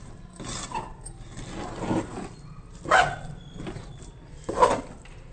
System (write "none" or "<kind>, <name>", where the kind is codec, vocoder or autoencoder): none